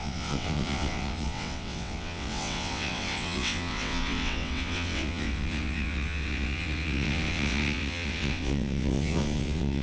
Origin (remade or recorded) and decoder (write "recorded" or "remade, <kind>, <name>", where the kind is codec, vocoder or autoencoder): remade, vocoder, WaveNeXt